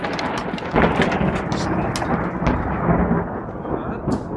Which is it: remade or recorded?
recorded